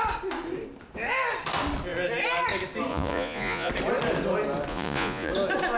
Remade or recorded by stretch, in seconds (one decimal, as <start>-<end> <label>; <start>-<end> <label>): 0.0-2.9 recorded; 2.9-3.7 remade; 3.7-4.7 recorded; 4.7-5.3 remade; 5.3-5.8 recorded